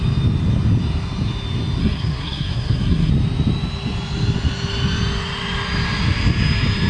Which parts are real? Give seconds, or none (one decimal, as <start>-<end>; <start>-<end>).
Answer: 0.0-1.8; 3.1-6.9